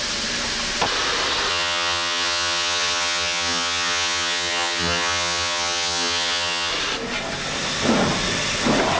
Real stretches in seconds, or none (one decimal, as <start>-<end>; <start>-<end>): 0.0-1.5; 6.7-9.0